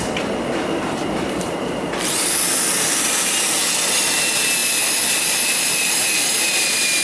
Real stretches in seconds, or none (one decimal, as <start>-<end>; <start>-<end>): 2.7-4.6; 5.9-7.0